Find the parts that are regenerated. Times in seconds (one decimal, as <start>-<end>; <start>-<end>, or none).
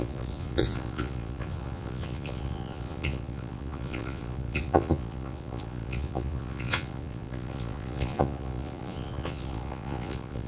0.0-10.5